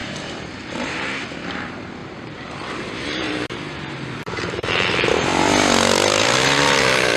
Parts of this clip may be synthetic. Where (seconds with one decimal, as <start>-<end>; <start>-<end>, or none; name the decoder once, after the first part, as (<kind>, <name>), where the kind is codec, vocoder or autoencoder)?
0.0-5.3 (vocoder, BigVGAN v2); 6.2-7.2